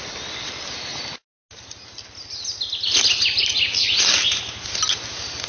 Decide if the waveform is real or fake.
real